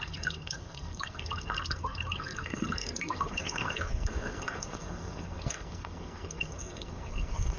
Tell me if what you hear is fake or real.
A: fake